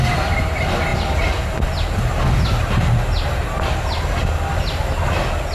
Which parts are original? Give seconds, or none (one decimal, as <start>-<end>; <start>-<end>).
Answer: 0.0-5.5

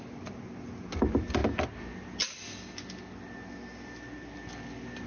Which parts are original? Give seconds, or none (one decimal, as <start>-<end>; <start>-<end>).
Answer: 0.0-5.1

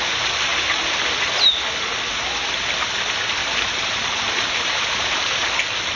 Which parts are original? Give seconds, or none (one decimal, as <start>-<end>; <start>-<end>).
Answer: 0.0-3.4